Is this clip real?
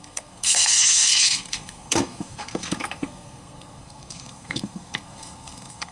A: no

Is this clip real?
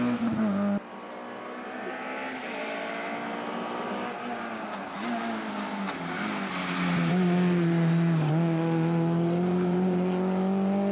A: yes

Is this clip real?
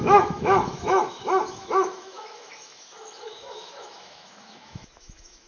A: no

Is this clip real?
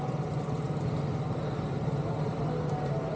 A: yes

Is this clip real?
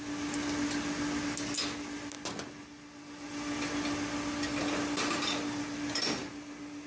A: yes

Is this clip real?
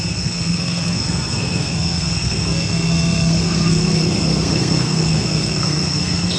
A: no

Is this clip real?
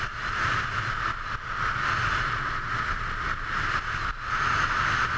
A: yes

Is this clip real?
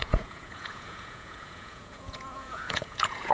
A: no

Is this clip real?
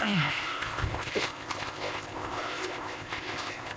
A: no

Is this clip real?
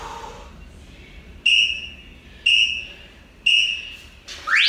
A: yes